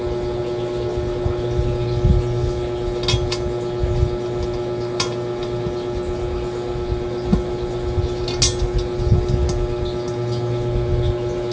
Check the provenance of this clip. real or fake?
real